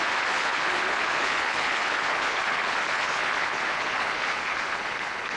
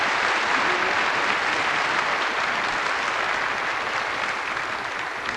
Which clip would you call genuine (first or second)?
second